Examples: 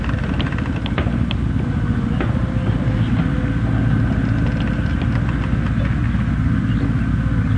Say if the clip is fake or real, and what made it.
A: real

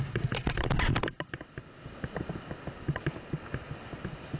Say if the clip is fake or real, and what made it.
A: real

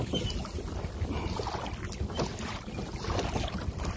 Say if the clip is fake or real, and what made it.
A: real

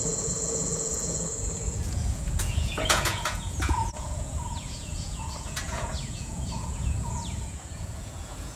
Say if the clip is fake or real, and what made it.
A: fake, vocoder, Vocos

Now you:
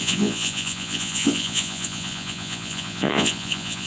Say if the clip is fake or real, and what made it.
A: fake, vocoder, Vocos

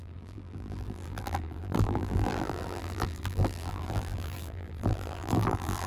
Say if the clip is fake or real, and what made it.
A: fake, vocoder, BigVGAN v2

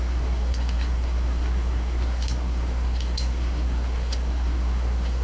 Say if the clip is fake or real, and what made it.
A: fake, codec, SNAC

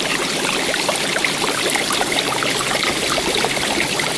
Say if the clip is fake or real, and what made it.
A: real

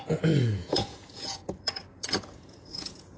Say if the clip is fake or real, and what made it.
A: fake, vocoder, Vocos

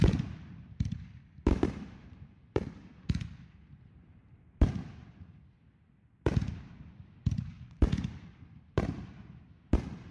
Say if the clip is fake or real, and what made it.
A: fake, vocoder, BigVGAN v2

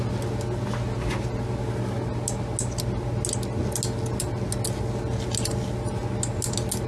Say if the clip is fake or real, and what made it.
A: real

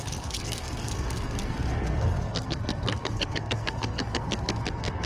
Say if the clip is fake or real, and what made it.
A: fake, codec, SNAC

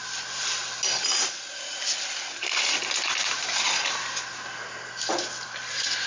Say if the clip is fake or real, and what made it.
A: real